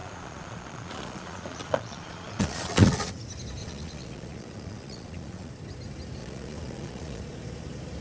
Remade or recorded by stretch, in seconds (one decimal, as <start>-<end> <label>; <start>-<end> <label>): 0.0-3.1 remade; 3.1-3.6 recorded; 3.6-5.5 remade; 5.5-6.2 recorded; 6.2-7.2 remade; 7.2-8.0 recorded